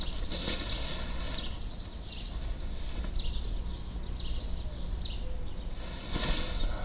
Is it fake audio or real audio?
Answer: real